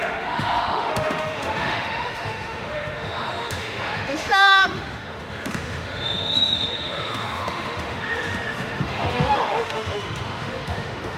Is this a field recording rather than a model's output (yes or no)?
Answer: no